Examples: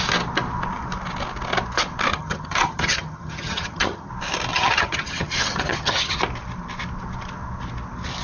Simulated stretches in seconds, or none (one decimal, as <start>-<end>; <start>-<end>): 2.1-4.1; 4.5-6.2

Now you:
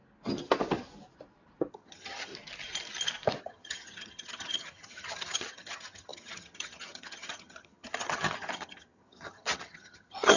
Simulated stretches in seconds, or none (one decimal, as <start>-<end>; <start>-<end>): 1.7-2.3; 3.4-10.4

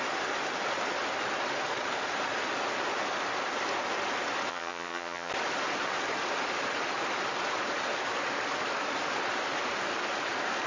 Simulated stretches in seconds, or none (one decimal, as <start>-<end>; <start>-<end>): 4.5-5.3

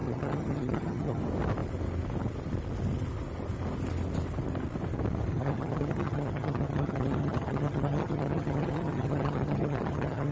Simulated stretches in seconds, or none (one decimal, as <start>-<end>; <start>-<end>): 0.0-1.2; 5.3-10.3

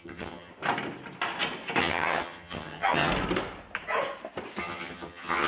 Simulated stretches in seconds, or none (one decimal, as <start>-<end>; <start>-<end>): 0.0-0.5; 1.8-3.1; 4.6-5.5

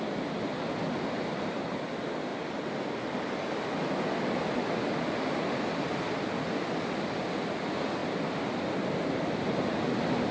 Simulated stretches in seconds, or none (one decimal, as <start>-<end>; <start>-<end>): none

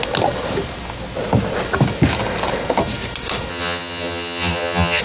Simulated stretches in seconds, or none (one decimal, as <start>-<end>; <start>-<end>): 3.5-5.0